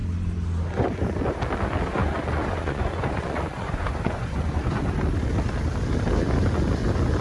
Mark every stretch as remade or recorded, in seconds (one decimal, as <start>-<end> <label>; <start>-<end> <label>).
0.0-2.0 recorded; 2.0-4.8 remade; 4.8-7.2 recorded